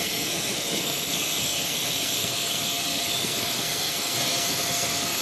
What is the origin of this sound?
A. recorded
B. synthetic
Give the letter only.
B